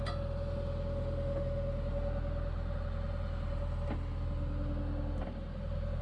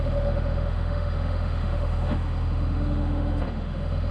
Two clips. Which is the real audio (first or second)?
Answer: first